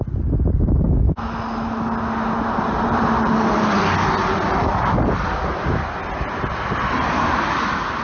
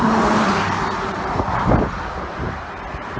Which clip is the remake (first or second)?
second